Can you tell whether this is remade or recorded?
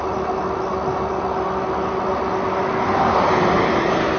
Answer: recorded